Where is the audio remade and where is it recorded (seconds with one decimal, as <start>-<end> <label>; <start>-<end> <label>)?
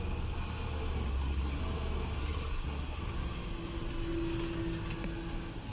0.0-1.1 recorded; 1.1-1.6 remade; 1.6-2.2 recorded; 2.2-3.0 remade; 3.0-5.7 recorded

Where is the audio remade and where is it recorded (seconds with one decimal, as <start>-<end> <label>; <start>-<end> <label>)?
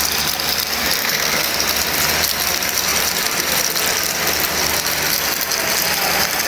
0.0-1.0 recorded; 1.0-1.5 remade; 1.5-6.5 recorded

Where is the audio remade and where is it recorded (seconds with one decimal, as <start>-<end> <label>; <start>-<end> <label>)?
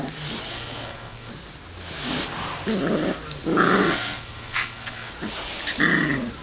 0.0-0.5 recorded; 0.5-1.3 remade; 1.3-3.8 recorded; 3.8-5.1 remade; 5.1-6.4 recorded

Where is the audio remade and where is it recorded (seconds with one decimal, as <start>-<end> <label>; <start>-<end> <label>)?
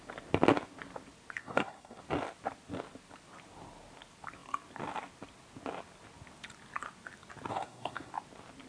0.0-1.4 recorded; 1.4-2.0 remade; 2.0-7.5 recorded; 7.5-8.1 remade; 8.1-8.7 recorded